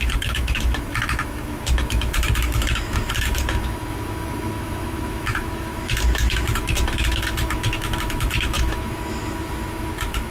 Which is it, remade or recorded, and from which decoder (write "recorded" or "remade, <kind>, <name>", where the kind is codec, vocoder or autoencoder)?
remade, autoencoder, DAC-VAE